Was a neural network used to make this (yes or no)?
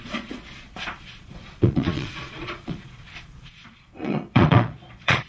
yes